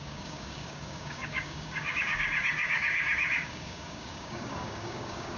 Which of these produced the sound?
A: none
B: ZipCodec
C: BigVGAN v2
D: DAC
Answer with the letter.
D